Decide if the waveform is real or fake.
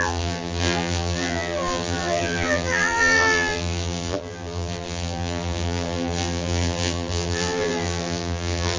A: fake